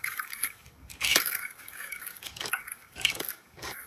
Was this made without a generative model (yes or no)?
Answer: no